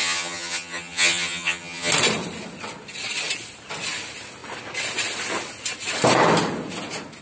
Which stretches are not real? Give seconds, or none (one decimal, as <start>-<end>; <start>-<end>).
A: 0.0-1.9